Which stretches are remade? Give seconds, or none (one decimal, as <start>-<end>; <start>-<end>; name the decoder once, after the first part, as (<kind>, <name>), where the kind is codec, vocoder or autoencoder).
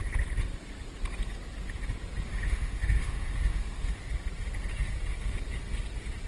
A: 2.3-4.0 (autoencoder, DAC-VAE)